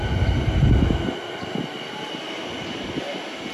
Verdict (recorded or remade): recorded